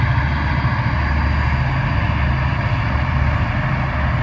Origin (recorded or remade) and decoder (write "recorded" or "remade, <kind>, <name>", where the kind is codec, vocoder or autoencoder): recorded